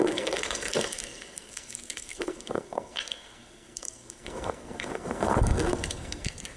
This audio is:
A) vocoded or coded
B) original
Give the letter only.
A